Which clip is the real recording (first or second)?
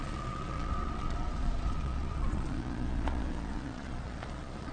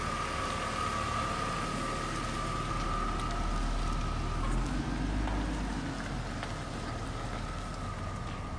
second